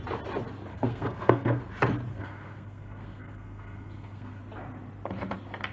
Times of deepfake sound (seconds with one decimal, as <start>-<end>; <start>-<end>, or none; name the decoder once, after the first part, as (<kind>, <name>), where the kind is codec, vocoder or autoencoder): 0.7-1.6 (codec, SNAC); 2.1-4.4